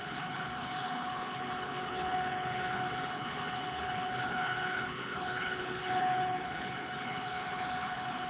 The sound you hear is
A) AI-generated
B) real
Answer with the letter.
A